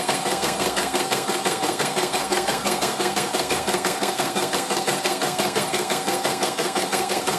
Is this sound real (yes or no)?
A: no